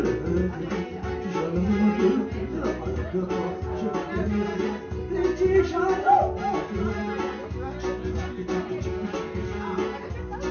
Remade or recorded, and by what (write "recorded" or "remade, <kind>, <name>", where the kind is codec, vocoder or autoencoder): recorded